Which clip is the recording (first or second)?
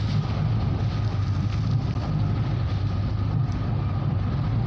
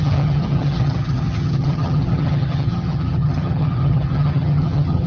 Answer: first